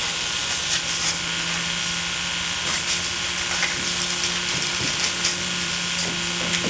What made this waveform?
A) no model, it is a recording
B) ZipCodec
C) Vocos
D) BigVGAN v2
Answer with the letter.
A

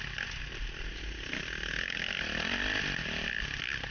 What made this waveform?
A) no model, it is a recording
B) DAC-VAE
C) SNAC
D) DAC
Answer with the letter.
A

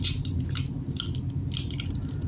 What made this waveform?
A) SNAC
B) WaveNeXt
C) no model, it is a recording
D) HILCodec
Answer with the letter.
C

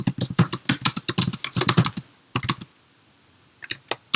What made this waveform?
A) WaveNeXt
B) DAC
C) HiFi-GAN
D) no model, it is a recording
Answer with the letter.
D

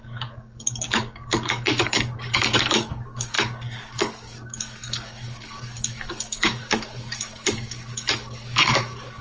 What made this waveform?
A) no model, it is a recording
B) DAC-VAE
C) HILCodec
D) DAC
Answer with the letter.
D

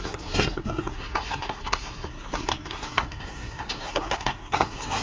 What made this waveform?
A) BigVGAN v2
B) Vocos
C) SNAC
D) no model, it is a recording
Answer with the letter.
C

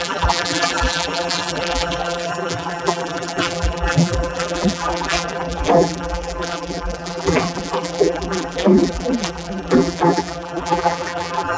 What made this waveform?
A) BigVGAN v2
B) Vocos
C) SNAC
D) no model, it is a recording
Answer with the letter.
A